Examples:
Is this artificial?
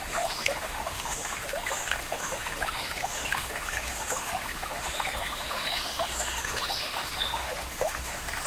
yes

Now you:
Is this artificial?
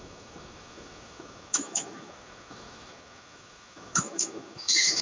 yes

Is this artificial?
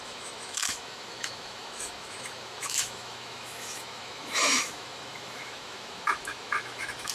yes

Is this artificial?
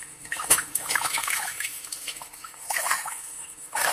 yes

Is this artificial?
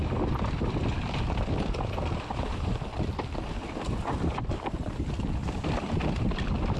yes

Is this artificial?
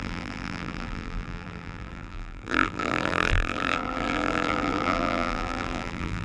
yes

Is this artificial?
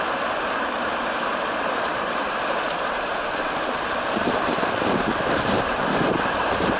yes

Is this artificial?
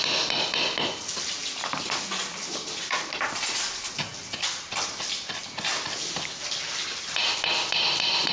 no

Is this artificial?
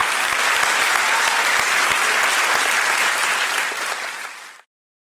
no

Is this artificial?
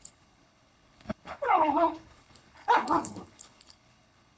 yes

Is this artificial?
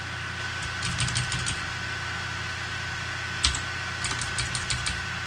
no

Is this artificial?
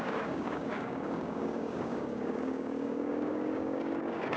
yes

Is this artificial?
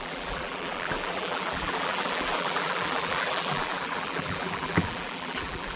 yes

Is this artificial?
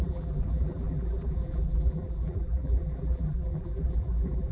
yes